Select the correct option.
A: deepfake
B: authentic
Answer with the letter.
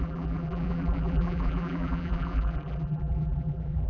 A